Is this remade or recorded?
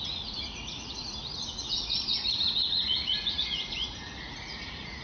remade